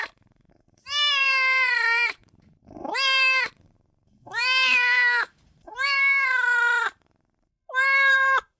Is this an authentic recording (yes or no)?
no